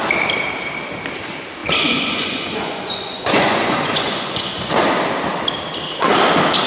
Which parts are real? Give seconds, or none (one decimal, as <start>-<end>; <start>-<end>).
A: 0.0-1.6; 4.7-6.7